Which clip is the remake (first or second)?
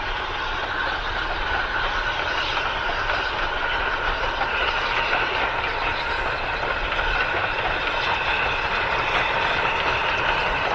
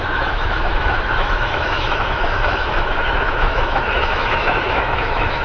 second